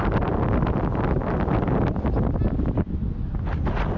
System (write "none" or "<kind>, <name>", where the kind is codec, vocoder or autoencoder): none